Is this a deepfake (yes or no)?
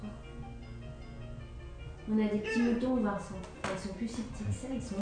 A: no